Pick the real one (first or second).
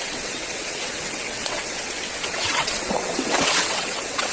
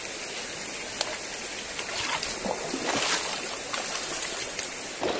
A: second